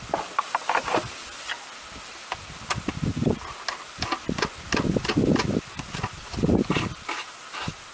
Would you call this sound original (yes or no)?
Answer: yes